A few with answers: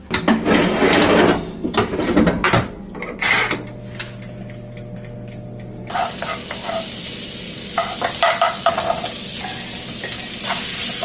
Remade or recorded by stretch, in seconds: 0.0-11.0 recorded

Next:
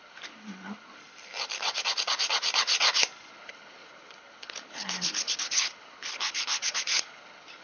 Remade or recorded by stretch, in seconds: 0.0-1.0 remade; 1.0-3.3 recorded; 3.3-7.6 remade

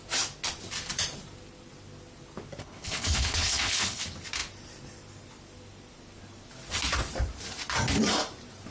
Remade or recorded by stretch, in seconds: 0.0-2.6 recorded; 2.6-4.0 remade; 4.0-8.7 recorded